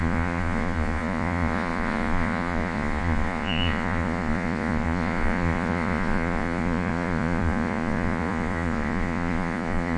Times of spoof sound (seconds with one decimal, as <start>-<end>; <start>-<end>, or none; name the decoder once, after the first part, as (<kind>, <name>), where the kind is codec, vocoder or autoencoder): 0.0-10.0 (vocoder, Vocos)